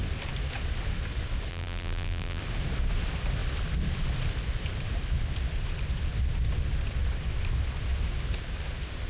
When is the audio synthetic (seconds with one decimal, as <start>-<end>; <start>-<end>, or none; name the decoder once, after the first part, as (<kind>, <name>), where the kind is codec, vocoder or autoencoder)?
1.5-2.4 (vocoder, BigVGAN v2)

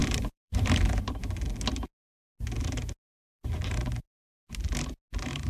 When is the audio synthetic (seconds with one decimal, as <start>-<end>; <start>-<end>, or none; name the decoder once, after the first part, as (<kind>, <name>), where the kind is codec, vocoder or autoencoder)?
0.0-0.9 (vocoder, BigVGAN v2); 3.2-4.4

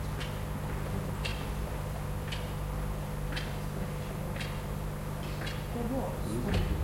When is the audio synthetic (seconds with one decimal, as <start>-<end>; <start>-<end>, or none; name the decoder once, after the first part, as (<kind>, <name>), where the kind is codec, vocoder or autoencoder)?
none

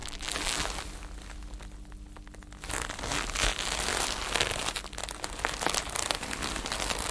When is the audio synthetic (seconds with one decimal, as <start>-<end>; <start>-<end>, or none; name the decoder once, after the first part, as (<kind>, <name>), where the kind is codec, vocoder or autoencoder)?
0.0-0.7 (vocoder, BigVGAN v2)